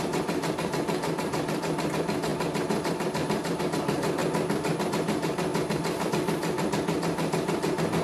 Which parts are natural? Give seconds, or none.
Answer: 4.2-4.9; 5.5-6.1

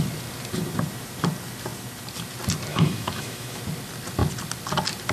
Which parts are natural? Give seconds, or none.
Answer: 0.0-2.7; 3.6-5.1